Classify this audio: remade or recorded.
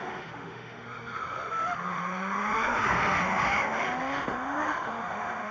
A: remade